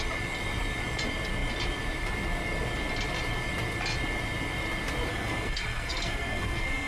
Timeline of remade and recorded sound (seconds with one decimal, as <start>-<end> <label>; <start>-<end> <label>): 0.0-5.1 recorded; 5.1-6.9 remade